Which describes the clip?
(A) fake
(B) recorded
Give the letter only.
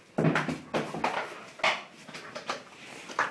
B